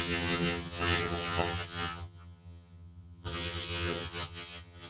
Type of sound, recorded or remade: remade